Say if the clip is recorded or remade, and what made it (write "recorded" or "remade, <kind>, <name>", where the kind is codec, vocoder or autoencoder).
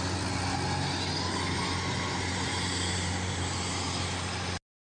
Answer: recorded